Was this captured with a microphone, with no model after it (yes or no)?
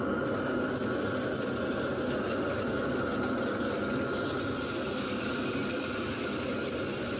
yes